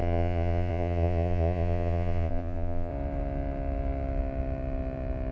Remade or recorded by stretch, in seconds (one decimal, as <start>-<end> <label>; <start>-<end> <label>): 0.0-2.9 remade; 2.9-5.3 recorded